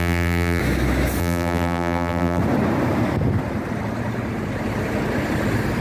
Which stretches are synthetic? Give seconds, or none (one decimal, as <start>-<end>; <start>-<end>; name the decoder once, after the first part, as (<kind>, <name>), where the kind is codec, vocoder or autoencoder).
0.0-0.6 (vocoder, BigVGAN v2); 1.2-2.4